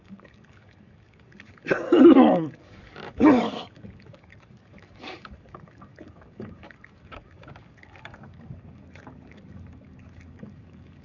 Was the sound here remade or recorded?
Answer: remade